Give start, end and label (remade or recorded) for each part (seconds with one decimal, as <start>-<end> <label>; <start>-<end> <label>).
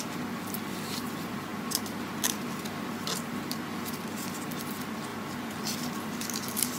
0.0-6.8 recorded